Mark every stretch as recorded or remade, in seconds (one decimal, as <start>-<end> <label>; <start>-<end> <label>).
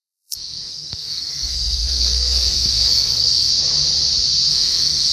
0.0-3.5 remade; 3.5-4.5 recorded; 4.5-5.1 remade